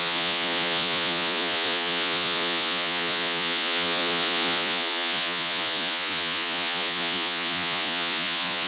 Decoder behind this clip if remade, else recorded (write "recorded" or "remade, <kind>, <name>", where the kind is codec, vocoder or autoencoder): remade, vocoder, Vocos